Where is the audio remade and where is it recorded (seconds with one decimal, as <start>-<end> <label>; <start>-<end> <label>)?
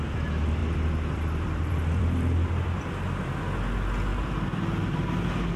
0.0-0.6 recorded; 0.6-2.9 remade; 2.9-5.6 recorded